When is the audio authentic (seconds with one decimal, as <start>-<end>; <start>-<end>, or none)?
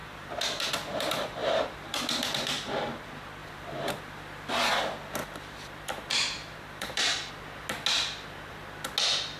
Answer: 0.7-1.4; 2.7-5.2; 7.3-9.4